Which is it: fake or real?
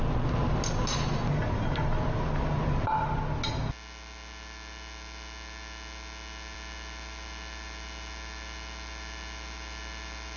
real